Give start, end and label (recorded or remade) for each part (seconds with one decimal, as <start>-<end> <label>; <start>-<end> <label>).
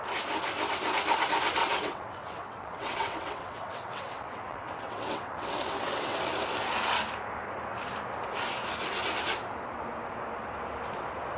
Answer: 0.0-1.6 recorded; 1.6-6.2 remade; 6.2-11.4 recorded